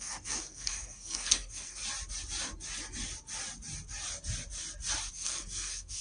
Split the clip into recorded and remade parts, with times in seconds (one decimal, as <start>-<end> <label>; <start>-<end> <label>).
0.0-1.8 remade; 1.8-5.1 recorded; 5.1-6.0 remade